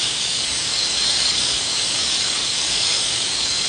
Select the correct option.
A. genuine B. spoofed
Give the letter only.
B